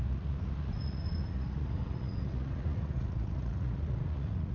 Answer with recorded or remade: remade